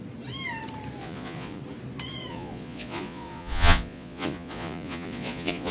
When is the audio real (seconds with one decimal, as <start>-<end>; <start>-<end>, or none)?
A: 0.0-1.0; 1.6-2.3